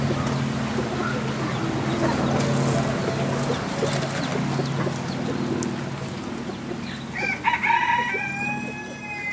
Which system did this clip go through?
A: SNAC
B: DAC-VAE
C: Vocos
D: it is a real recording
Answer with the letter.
D